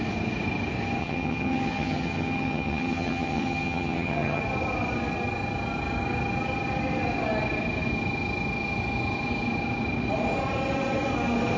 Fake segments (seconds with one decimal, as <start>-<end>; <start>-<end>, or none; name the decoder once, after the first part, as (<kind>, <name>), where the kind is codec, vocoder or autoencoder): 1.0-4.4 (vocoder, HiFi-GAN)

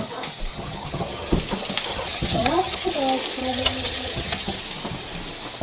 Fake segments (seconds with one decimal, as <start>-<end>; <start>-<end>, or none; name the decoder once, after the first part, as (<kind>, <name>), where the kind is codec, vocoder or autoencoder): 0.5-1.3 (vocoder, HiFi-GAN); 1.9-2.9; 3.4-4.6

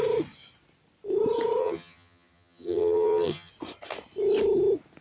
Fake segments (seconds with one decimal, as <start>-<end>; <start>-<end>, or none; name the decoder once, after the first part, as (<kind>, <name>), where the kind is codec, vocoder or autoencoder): 1.6-3.5 (vocoder, HiFi-GAN)

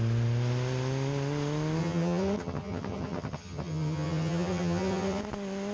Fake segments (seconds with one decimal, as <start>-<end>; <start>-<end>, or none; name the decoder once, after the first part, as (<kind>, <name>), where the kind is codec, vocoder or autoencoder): 1.8-5.2 (vocoder, HiFi-GAN)